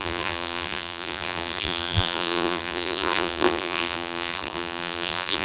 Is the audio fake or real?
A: fake